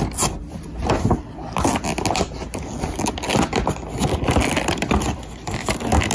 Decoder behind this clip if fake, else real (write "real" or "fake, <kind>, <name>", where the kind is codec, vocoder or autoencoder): real